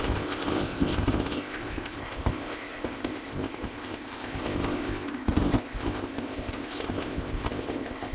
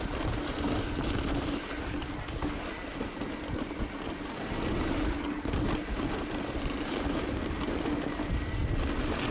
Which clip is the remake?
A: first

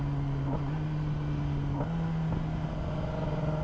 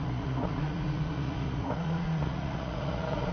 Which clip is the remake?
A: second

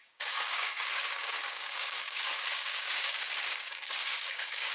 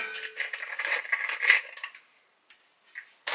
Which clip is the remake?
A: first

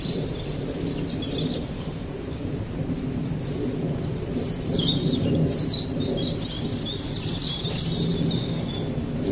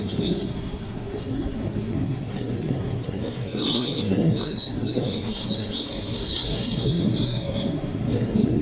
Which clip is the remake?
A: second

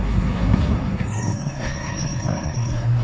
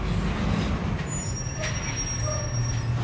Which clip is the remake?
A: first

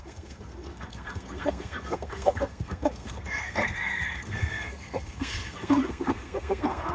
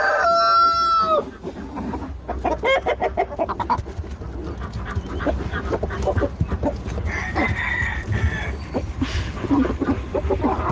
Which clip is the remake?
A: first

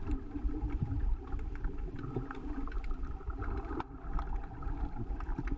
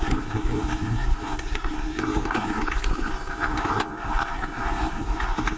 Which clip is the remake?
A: second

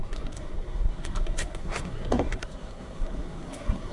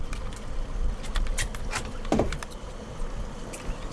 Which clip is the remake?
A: first